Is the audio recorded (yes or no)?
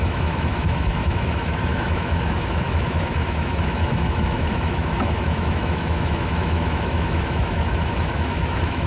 no